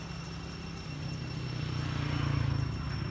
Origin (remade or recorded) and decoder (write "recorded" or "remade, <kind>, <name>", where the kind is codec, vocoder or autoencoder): recorded